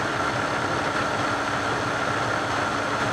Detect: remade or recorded recorded